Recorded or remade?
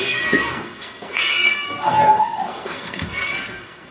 remade